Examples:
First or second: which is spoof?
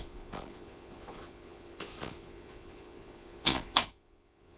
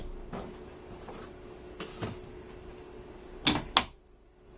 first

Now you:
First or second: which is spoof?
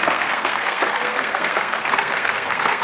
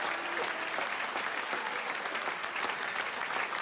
first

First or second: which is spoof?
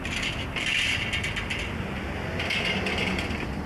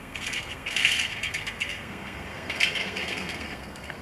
second